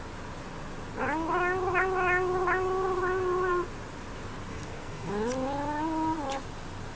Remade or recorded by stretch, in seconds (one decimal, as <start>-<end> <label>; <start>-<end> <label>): 0.0-4.5 recorded; 4.5-5.1 remade; 5.1-7.0 recorded